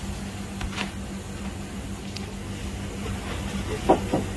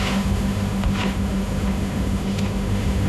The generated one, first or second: second